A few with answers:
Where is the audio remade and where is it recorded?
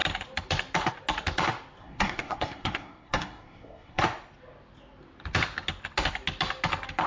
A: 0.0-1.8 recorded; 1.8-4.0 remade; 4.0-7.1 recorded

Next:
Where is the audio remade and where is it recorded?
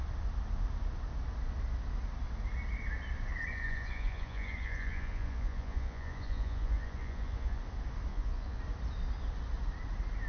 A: 0.0-3.5 recorded; 3.5-7.6 remade; 7.6-8.1 recorded; 8.1-8.6 remade; 8.6-10.3 recorded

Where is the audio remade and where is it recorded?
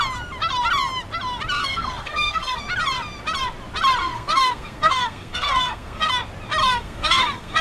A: 0.0-1.6 recorded; 1.6-2.6 remade; 2.6-4.0 recorded; 4.0-6.1 remade; 6.1-6.6 recorded; 6.6-7.6 remade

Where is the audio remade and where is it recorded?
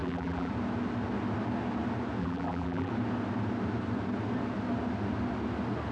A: 0.0-0.5 remade; 0.5-2.2 recorded; 2.2-2.9 remade; 2.9-5.9 recorded